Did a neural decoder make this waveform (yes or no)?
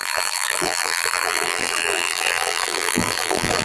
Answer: yes